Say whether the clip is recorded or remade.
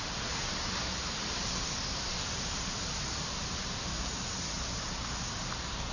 remade